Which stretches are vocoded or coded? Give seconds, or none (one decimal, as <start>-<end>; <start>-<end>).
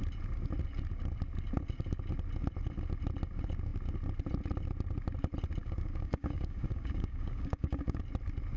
5.6-8.0